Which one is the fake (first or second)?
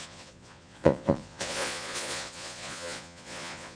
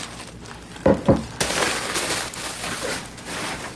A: first